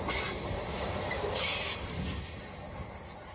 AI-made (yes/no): no